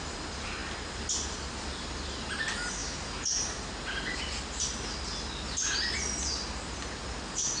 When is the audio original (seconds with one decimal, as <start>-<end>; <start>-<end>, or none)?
0.0-7.6